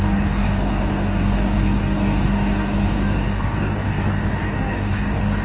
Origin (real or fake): fake